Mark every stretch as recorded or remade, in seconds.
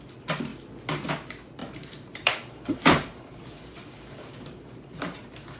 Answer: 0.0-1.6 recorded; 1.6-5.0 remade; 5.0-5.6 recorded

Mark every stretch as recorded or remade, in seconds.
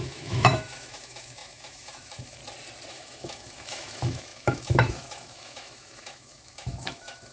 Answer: 0.0-2.4 remade; 2.4-2.9 recorded; 2.9-7.3 remade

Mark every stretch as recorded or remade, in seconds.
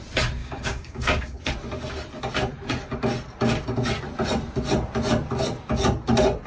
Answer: 0.0-0.4 recorded; 0.4-1.5 remade; 1.5-6.5 recorded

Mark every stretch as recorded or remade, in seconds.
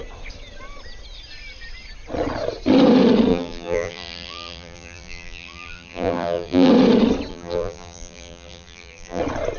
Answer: 0.0-3.3 recorded; 3.3-6.7 remade; 6.7-7.3 recorded; 7.3-9.2 remade; 9.2-9.6 recorded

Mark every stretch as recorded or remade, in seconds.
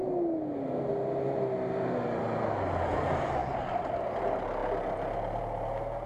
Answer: 0.0-6.1 recorded